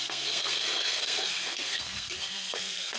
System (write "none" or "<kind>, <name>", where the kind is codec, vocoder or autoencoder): codec, SNAC